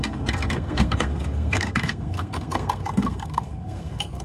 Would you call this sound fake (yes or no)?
yes